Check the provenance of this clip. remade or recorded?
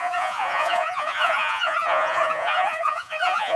remade